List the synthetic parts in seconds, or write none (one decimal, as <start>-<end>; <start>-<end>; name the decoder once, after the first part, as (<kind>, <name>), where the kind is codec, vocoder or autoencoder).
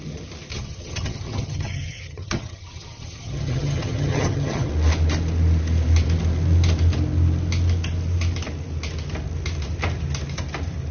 0.5-4.7 (vocoder, HiFi-GAN)